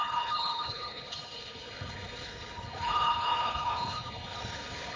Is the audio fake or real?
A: fake